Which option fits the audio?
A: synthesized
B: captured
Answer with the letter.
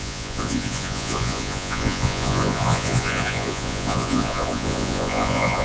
A